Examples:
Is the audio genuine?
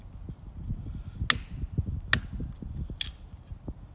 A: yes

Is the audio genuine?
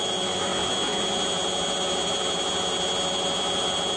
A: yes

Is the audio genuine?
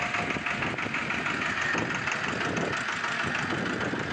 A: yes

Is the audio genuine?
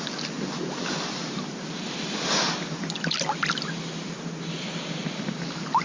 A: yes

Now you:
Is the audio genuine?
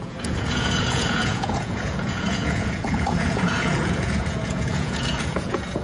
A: no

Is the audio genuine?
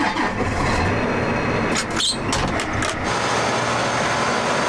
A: yes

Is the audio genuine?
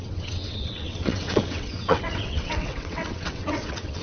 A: no